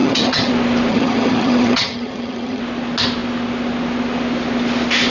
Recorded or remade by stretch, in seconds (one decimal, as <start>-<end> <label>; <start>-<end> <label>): 0.0-0.5 remade; 0.5-0.9 recorded; 0.9-2.6 remade; 2.6-5.1 recorded